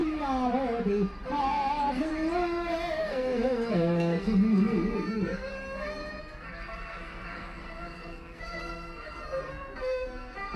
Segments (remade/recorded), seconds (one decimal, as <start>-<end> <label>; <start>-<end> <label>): 0.0-1.4 recorded; 1.4-2.1 remade; 2.1-3.0 recorded; 3.0-5.5 remade; 5.5-6.2 recorded; 6.2-10.6 remade